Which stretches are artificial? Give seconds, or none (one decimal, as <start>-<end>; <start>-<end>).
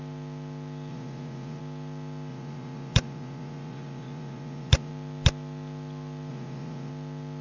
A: 0.9-1.6; 2.3-4.9; 6.3-6.9